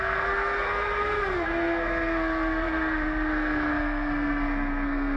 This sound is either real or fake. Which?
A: fake